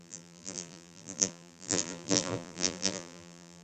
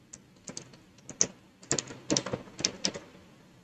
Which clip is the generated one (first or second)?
first